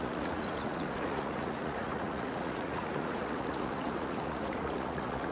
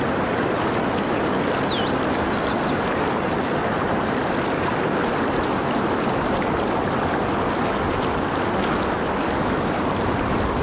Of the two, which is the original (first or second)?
second